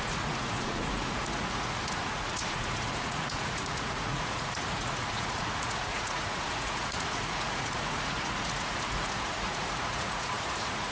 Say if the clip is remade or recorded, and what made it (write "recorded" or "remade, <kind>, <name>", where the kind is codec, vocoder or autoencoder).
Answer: remade, vocoder, Vocos